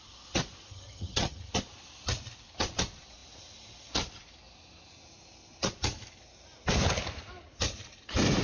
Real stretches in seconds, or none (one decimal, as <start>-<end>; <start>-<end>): 0.0-0.7; 1.5-8.4

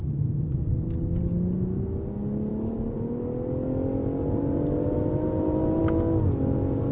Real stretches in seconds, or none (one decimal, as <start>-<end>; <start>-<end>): 0.8-2.5; 3.2-4.2; 5.8-6.9

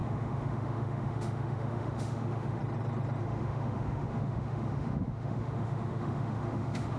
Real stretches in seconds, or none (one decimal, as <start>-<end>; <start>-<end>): 2.6-3.2

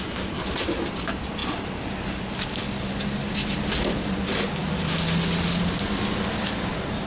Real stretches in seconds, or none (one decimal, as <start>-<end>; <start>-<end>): 0.0-7.1